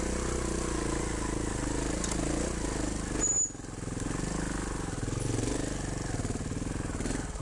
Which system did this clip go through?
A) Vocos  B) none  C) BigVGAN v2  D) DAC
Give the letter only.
B